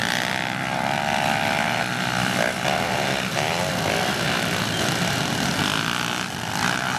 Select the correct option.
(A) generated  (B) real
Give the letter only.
B